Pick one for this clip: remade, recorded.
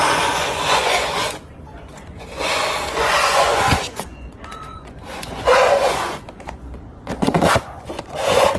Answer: remade